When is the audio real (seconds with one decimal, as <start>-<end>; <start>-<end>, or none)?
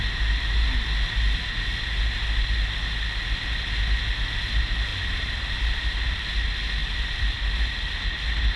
0.0-4.9; 5.8-6.8; 7.4-8.6